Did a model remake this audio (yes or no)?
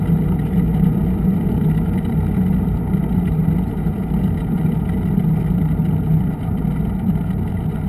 no